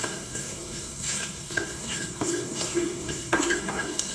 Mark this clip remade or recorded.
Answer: remade